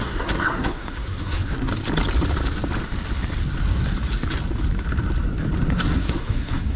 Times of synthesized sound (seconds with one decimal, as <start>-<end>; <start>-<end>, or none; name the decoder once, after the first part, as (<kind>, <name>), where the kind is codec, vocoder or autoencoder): 0.0-1.7 (codec, SNAC); 5.7-6.8

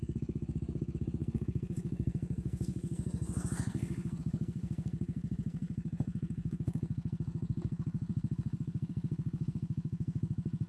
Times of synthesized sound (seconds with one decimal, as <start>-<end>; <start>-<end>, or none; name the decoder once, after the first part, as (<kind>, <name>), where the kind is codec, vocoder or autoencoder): 0.0-10.7 (codec, SNAC)